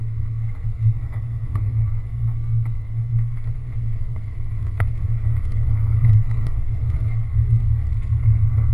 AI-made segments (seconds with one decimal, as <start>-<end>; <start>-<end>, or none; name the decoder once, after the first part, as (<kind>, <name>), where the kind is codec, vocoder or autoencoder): 0.0-8.7 (codec, SNAC)